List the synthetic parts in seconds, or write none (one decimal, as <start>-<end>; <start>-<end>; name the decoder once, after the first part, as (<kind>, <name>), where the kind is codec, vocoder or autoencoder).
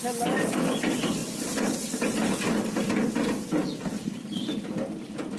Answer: none